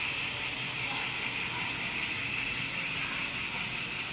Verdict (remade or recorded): recorded